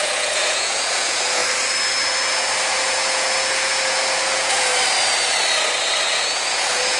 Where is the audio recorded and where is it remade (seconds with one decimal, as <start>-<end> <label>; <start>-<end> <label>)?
0.0-1.4 remade; 1.4-2.6 recorded; 2.6-4.7 remade; 4.7-6.2 recorded; 6.2-7.0 remade